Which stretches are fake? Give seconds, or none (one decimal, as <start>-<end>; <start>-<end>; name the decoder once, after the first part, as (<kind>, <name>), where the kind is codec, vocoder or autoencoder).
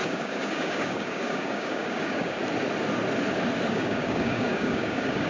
0.0-2.4 (codec, DAC); 3.7-5.3